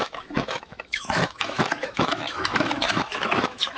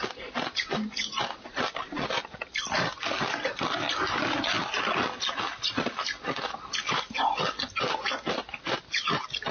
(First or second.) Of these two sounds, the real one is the second